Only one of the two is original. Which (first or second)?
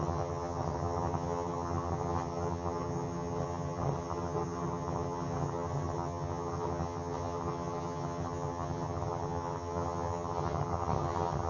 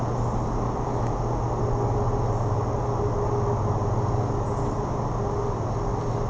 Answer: second